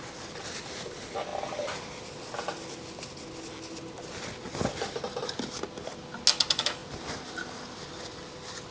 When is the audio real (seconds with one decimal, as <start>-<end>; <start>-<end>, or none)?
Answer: 0.0-8.7